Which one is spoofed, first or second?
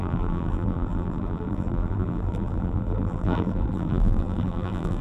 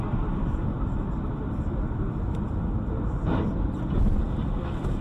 first